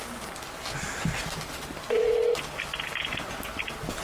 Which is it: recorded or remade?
recorded